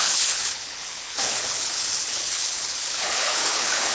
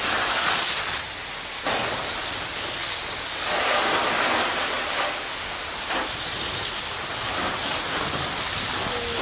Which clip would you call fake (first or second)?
first